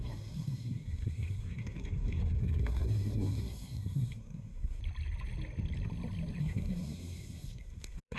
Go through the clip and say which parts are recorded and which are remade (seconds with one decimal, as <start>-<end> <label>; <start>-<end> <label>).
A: 0.0-4.8 remade; 4.8-6.4 recorded; 6.4-8.2 remade